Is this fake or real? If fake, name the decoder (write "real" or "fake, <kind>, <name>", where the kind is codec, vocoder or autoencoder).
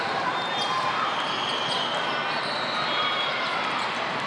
real